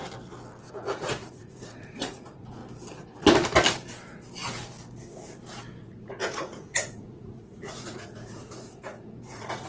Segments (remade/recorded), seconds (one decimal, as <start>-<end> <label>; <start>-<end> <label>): 0.0-0.7 recorded; 0.7-2.6 remade; 2.6-5.8 recorded; 5.8-9.7 remade